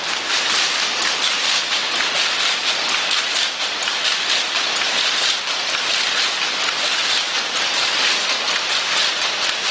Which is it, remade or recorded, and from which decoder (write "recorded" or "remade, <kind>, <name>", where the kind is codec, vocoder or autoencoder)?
remade, vocoder, BigVGAN v2